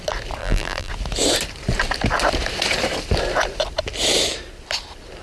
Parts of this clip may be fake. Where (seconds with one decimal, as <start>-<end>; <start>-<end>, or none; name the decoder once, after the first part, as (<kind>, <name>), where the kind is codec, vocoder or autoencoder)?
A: 0.4-0.9 (vocoder, BigVGAN v2)